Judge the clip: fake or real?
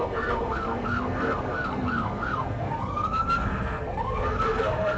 fake